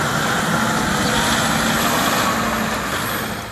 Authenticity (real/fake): real